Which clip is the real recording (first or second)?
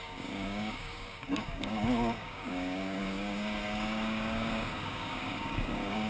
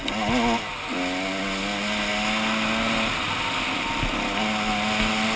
second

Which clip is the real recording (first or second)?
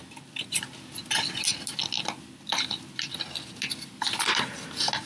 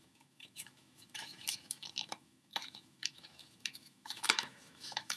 first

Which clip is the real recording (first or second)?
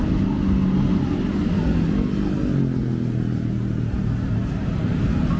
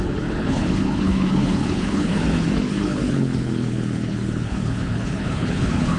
first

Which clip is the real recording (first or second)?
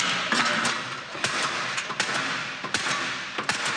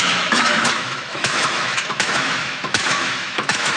first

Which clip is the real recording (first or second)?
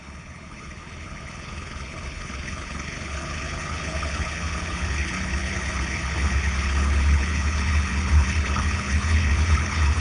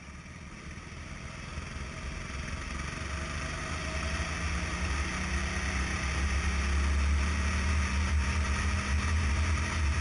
second